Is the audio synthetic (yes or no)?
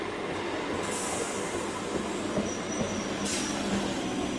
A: no